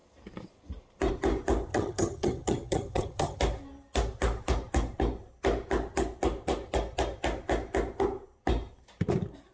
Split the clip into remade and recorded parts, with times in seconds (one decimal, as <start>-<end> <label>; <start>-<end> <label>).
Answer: 0.0-1.7 recorded; 1.7-3.4 remade; 3.4-9.5 recorded